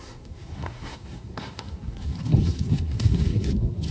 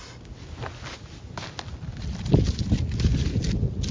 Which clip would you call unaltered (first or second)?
second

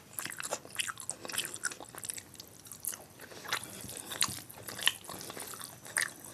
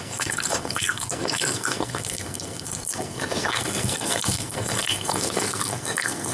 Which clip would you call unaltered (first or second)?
first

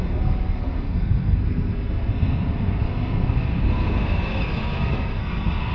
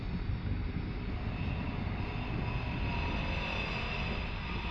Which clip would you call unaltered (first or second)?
second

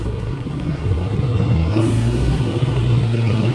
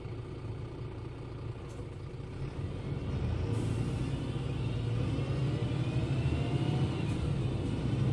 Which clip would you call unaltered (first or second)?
second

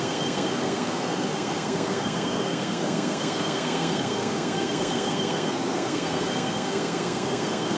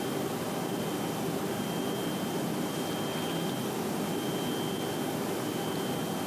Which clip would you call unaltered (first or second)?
second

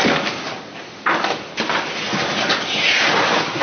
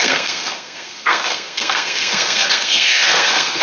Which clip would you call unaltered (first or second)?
first